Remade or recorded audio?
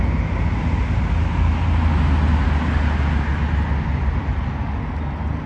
recorded